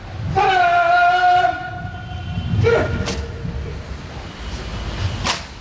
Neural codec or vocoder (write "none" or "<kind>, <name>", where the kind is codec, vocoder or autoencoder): none